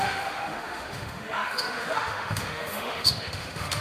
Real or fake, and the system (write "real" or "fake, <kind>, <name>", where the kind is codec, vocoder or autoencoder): fake, autoencoder, DAC-VAE